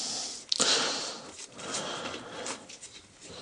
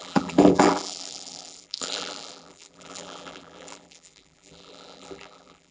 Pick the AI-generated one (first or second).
second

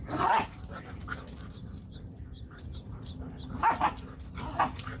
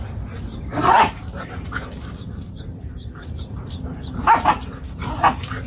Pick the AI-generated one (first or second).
second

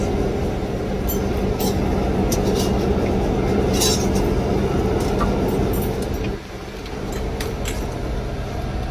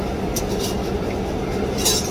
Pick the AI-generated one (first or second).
second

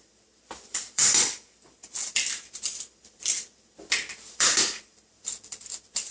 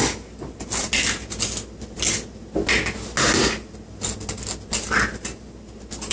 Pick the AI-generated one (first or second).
first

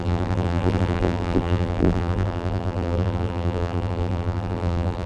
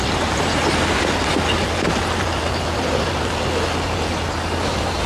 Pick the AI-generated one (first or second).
first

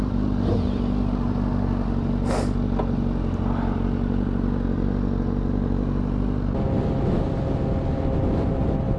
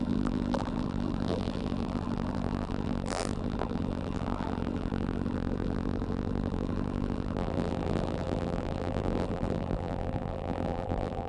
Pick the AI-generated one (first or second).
second